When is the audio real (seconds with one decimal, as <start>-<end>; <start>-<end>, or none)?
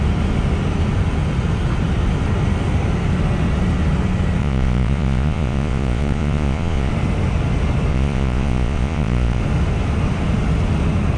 0.0-4.4; 6.9-7.9; 9.4-11.2